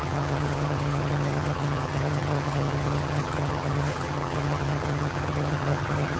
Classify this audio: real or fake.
fake